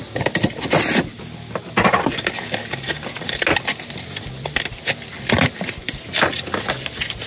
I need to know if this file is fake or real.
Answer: real